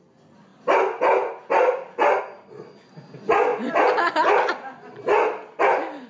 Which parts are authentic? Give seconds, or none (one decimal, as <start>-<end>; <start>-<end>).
0.0-6.1